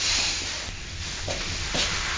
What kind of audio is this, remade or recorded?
recorded